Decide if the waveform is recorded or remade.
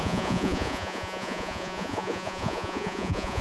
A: remade